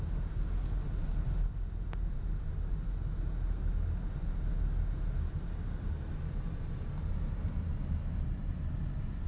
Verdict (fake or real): real